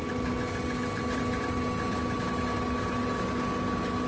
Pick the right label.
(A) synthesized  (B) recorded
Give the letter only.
B